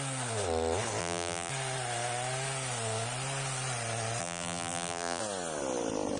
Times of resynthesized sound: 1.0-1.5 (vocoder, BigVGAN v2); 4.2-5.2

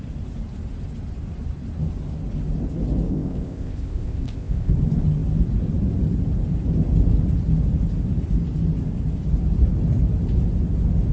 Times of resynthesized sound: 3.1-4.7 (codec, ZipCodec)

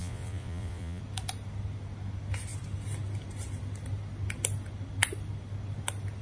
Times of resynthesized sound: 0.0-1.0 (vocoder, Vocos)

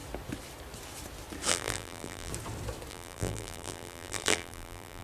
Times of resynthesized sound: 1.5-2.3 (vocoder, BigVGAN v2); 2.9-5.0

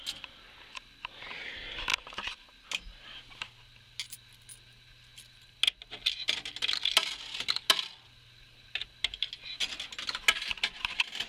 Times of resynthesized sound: none